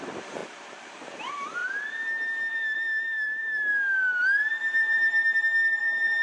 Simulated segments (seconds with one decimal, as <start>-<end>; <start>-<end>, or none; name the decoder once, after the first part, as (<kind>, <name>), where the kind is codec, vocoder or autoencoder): 0.0-1.6 (vocoder, BigVGAN v2); 2.5-3.7; 4.2-5.2; 5.8-6.2